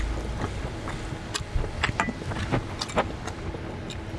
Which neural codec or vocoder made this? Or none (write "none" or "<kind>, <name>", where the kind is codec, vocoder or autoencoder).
none